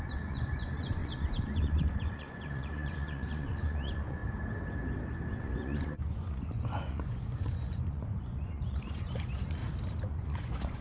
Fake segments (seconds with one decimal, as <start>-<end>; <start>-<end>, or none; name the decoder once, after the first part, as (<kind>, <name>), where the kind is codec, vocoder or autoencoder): 0.0-4.2 (vocoder, Vocos); 5.3-9.6; 10.1-10.8